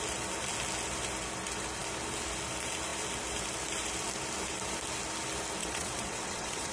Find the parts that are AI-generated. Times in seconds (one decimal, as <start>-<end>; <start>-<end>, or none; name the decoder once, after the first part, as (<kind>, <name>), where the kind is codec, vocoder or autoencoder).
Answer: 5.6-6.7 (vocoder, WaveNeXt)